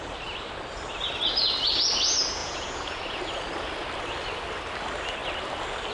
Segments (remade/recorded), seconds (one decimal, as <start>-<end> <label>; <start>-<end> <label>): 0.0-2.4 recorded; 2.4-3.2 remade; 3.2-5.9 recorded